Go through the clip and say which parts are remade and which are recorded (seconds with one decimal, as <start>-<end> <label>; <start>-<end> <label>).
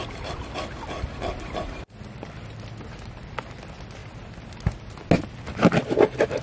0.0-6.4 recorded